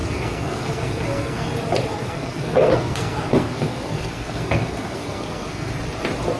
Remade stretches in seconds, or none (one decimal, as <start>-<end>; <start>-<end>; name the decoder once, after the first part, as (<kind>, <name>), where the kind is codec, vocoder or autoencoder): 0.0-1.5 (codec, SNAC); 1.9-5.7